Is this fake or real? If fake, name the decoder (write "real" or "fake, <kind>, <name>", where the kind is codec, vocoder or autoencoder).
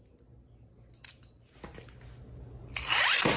real